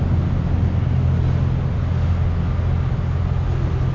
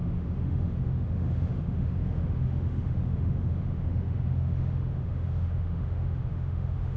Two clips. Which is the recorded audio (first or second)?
first